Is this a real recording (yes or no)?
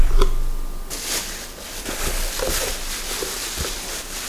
yes